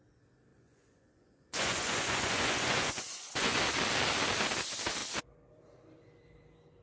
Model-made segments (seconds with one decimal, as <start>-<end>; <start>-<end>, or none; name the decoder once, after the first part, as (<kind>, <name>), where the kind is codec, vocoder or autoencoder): 0.5-3.6 (vocoder, Vocos)